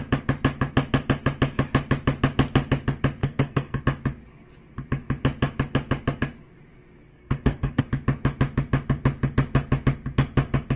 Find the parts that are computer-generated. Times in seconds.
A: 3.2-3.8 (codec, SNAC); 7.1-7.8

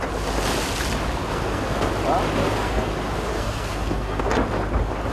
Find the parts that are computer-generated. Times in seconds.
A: 1.2-1.9 (codec, SNAC); 2.4-2.9; 3.3-4.2

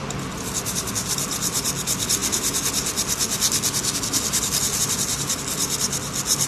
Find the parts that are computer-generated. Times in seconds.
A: none

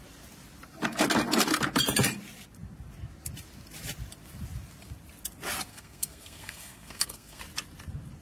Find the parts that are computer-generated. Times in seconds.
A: 5.7-7.4 (codec, SNAC)

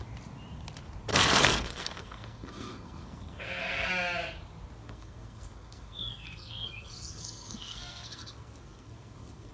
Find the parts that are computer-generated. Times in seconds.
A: 1.1-3.9 (codec, SNAC); 4.8-9.5